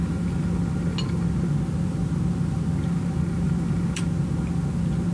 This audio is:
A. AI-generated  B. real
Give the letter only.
B